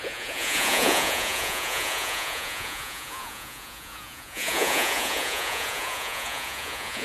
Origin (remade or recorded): remade